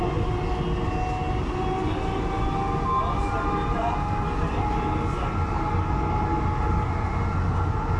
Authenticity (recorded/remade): recorded